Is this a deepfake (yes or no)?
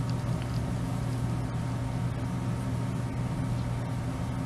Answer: no